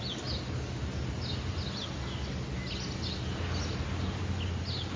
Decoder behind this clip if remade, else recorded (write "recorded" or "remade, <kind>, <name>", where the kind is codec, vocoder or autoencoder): recorded